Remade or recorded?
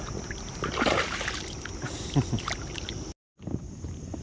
recorded